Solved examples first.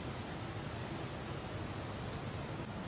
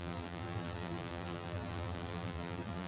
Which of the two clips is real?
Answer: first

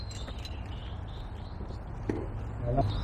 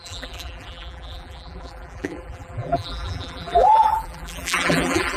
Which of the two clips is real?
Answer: first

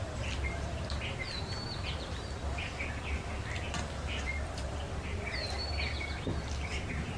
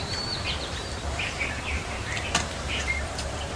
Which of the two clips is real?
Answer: first